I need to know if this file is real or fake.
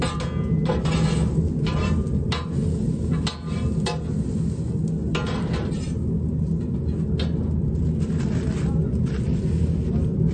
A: real